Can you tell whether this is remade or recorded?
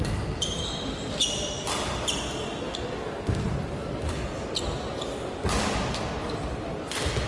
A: recorded